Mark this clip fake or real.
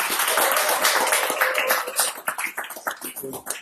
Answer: real